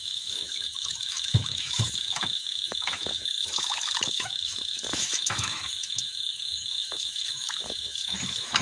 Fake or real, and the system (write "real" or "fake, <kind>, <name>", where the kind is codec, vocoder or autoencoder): fake, autoencoder, DAC-VAE